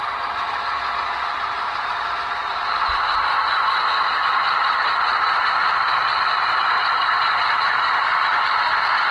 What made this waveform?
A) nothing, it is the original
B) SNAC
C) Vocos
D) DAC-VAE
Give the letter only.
A